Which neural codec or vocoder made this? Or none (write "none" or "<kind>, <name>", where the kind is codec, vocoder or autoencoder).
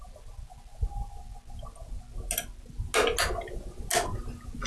none